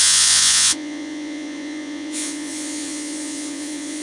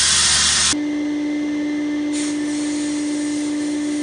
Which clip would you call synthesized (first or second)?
first